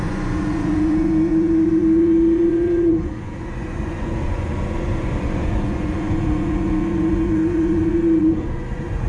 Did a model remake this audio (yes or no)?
yes